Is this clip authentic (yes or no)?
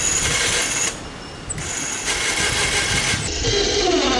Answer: yes